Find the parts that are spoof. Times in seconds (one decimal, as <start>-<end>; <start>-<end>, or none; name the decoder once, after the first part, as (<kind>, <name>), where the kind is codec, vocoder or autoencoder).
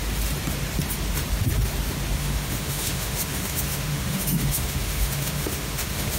2.2-6.2 (autoencoder, DAC-VAE)